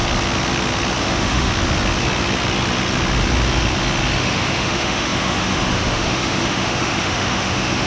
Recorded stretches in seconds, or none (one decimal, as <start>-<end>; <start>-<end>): 0.0-1.0; 1.5-4.2